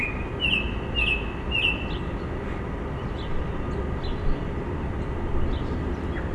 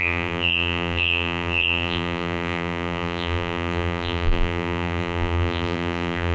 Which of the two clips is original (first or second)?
first